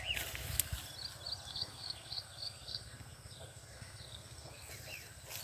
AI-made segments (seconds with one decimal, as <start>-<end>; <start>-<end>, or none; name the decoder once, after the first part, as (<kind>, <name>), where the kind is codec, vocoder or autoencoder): 1.5-4.7 (codec, SNAC)